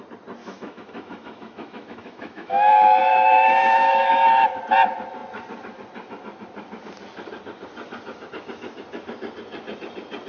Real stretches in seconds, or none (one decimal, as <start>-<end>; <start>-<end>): 0.0-0.4; 2.7-3.1; 4.6-10.3